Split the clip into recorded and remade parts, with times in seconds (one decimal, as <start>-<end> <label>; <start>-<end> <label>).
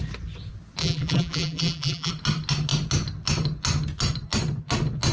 0.0-0.8 recorded; 0.8-2.1 remade; 2.1-5.1 recorded